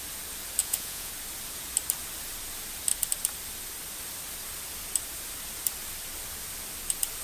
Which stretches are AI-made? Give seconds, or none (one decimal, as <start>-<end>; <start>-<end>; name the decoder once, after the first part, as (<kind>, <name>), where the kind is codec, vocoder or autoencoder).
0.6-1.1 (vocoder, Vocos)